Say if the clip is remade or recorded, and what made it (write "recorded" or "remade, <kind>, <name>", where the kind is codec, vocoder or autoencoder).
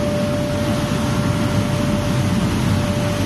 recorded